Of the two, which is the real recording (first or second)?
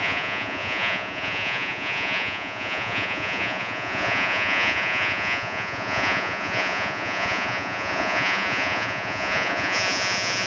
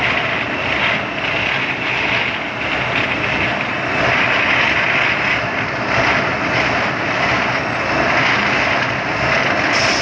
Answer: second